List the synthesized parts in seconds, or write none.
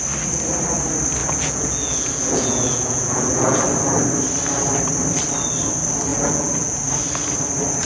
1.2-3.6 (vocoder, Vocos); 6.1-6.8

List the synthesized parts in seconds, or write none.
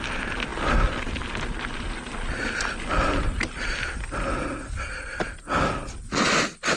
none